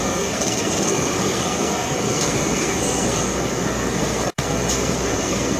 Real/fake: fake